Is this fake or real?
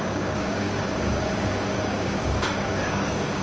fake